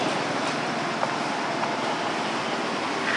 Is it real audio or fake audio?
real